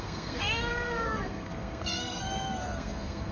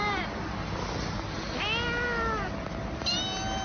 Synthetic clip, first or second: first